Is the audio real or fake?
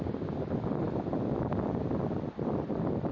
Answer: real